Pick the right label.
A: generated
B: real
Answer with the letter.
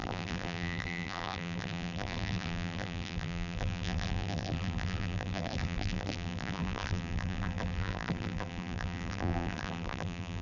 A